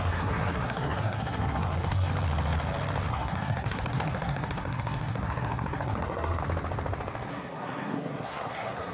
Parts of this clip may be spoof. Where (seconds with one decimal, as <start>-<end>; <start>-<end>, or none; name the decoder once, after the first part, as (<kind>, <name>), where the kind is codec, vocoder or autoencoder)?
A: 0.0-2.1 (codec, SNAC); 3.1-6.4; 7.3-8.9